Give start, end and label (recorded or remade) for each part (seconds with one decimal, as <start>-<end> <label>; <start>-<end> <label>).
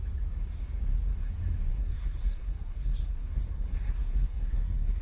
0.0-1.7 recorded; 1.7-5.0 remade